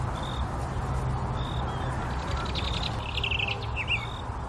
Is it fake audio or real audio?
real